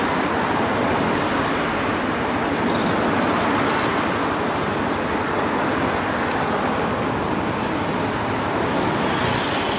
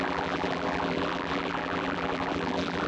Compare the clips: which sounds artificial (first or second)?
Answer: second